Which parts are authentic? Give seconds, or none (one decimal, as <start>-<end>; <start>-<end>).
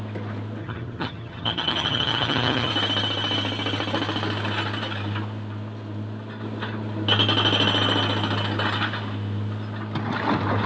0.0-0.6; 2.7-10.7